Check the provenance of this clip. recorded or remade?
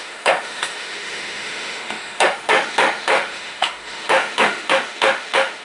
remade